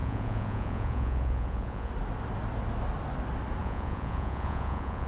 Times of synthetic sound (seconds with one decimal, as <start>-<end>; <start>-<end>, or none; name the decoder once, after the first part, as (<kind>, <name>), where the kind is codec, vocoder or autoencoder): 0.0-1.9 (vocoder, Vocos); 3.6-5.1